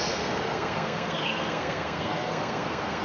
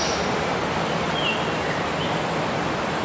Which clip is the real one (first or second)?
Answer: second